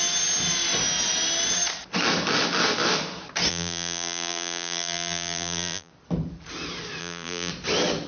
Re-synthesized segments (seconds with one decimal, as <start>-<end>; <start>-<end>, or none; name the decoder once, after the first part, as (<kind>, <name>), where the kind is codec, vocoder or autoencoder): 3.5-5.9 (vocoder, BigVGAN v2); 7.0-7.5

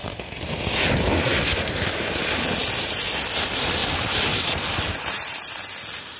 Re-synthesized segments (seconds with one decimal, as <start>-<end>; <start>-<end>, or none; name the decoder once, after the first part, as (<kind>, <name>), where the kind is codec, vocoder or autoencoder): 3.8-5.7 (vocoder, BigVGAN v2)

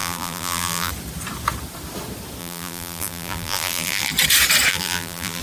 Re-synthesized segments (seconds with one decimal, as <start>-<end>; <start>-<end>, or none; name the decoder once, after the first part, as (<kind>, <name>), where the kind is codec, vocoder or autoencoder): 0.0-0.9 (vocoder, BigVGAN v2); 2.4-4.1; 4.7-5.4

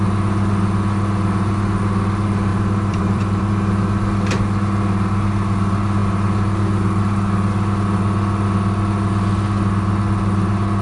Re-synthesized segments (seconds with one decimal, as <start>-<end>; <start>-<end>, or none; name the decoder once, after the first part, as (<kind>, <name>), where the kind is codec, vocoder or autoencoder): 2.5-3.5 (vocoder, BigVGAN v2)